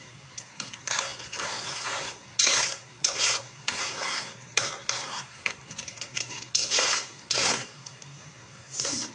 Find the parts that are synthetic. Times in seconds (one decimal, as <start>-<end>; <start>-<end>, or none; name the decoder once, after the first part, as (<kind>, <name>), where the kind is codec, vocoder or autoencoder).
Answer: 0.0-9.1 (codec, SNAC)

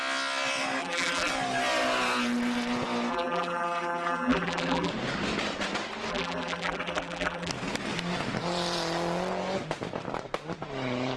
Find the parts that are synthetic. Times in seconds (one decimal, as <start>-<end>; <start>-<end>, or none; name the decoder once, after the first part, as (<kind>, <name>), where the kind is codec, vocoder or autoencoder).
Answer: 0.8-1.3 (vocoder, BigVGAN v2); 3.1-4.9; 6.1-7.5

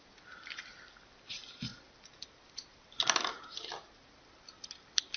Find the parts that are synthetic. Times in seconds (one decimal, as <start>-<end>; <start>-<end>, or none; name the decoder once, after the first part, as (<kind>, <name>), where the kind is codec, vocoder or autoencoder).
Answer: none

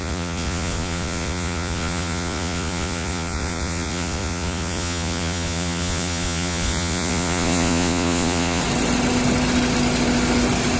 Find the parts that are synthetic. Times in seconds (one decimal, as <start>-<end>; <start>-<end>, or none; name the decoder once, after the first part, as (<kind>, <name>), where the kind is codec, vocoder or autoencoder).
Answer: 0.0-8.6 (vocoder, Vocos)

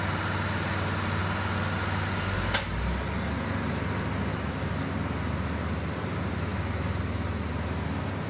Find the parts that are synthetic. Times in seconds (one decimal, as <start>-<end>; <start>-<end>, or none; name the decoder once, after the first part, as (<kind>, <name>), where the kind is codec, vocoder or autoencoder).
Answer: 4.3-4.9 (autoencoder, DAC-VAE)